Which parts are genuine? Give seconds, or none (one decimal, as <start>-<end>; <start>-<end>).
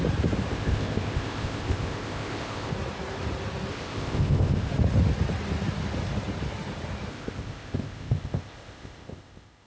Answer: 0.0-0.5; 2.7-3.7; 4.7-7.1